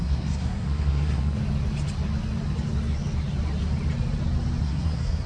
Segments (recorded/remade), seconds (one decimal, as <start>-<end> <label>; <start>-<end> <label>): 0.0-1.4 remade; 1.4-4.6 recorded; 4.6-5.3 remade